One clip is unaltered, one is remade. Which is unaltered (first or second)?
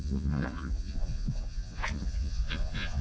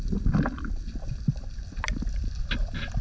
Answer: second